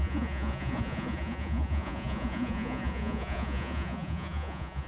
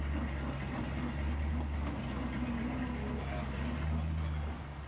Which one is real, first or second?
second